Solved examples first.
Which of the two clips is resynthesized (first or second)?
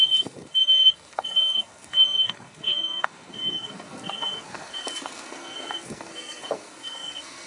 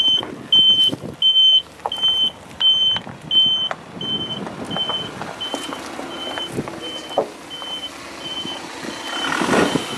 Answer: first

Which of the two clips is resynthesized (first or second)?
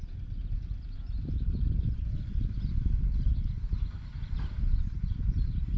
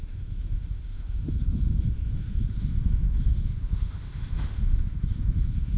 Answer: second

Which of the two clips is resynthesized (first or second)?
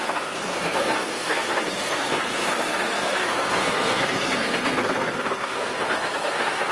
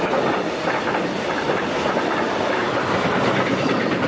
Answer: first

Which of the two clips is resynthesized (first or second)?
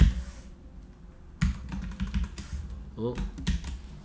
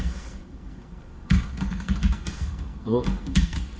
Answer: second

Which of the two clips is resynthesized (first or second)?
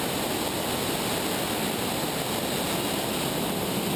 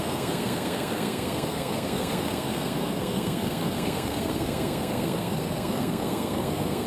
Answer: second